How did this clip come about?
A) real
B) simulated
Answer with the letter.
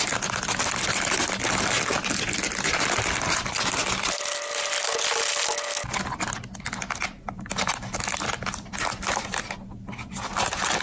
A